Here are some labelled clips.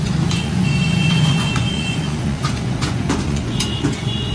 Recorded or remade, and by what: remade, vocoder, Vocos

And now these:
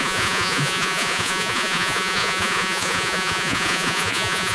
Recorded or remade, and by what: remade, vocoder, Vocos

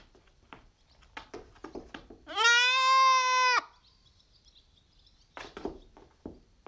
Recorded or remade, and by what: recorded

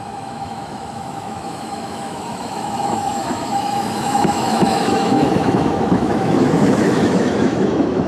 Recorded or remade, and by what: remade, autoencoder, DAC-VAE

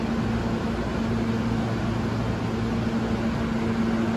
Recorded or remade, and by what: recorded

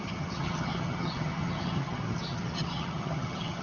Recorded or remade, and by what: remade, vocoder, HiFi-GAN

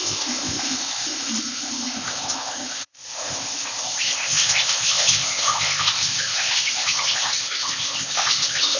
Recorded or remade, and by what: remade, codec, ZipCodec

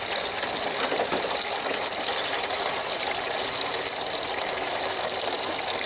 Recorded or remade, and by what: remade, vocoder, BigVGAN v2